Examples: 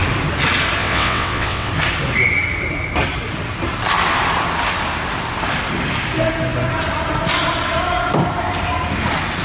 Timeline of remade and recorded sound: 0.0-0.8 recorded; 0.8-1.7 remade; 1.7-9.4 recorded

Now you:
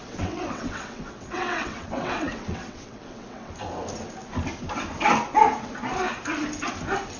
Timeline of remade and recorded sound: 0.0-3.5 remade; 3.5-7.2 recorded

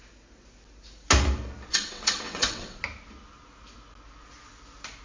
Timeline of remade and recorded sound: 0.0-1.7 recorded; 1.7-2.8 remade; 2.8-5.0 recorded

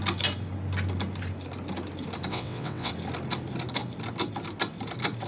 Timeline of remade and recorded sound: 0.0-2.3 recorded; 2.3-2.9 remade; 2.9-5.3 recorded

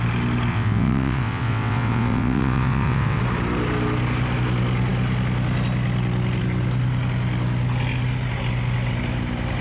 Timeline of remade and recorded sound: 0.0-0.5 recorded; 0.5-3.2 remade; 3.2-9.6 recorded

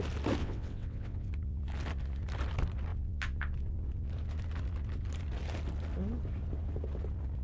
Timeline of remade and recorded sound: 0.0-0.4 recorded; 0.4-1.3 remade; 1.3-7.4 recorded

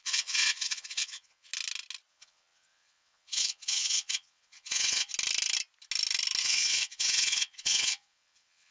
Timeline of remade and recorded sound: 0.0-1.5 remade; 1.5-2.1 recorded; 2.1-5.1 remade; 5.1-6.4 recorded; 6.4-8.7 remade